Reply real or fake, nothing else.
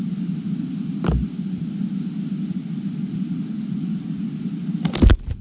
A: real